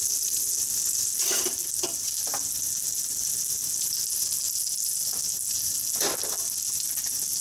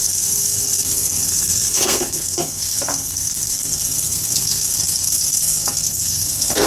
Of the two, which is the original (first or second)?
first